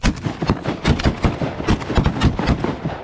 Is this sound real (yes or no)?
yes